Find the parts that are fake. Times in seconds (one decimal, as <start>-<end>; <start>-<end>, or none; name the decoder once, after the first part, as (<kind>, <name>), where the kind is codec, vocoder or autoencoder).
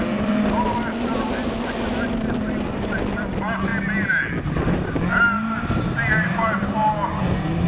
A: none